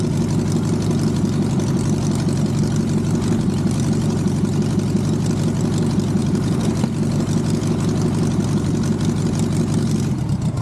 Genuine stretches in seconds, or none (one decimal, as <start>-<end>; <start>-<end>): 0.0-6.2; 6.7-10.6